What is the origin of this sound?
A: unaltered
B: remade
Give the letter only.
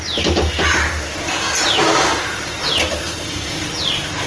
A